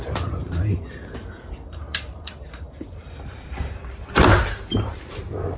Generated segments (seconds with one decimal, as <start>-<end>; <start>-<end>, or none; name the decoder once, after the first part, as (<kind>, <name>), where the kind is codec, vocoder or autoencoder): 0.4-3.8 (vocoder, BigVGAN v2)